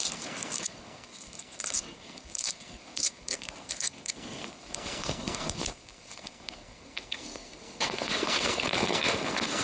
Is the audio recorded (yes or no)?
no